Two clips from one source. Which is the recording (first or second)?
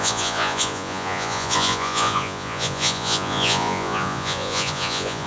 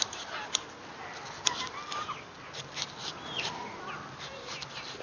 second